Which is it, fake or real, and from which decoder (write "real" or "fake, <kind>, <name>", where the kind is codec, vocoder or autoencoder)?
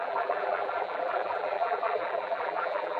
fake, vocoder, BigVGAN v2